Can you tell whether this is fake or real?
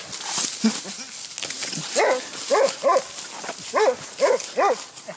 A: real